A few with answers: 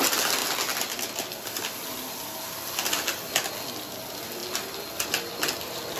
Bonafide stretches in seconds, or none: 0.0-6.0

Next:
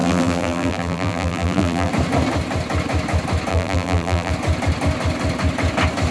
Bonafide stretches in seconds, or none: 1.9-3.5; 4.3-6.1

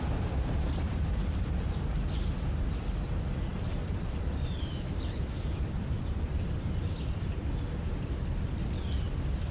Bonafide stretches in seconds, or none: none

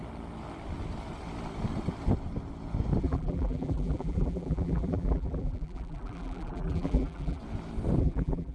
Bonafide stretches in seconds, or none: 0.0-3.0; 7.4-8.0

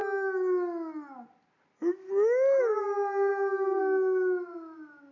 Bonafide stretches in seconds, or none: 0.0-3.3; 3.8-5.1

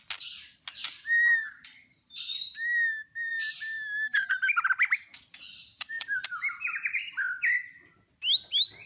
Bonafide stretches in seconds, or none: 0.0-0.8; 2.2-3.3; 4.7-5.7; 7.1-8.9

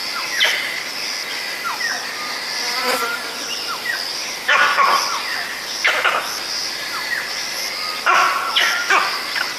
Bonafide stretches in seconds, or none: 0.0-4.2; 5.0-9.6